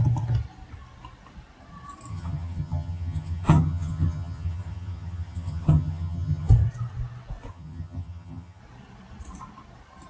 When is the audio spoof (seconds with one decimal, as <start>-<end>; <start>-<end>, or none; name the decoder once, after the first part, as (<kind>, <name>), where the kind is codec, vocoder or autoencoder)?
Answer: 2.1-6.5 (vocoder, HiFi-GAN); 7.5-8.6